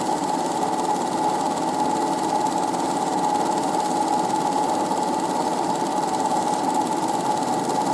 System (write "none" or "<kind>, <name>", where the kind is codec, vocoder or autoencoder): none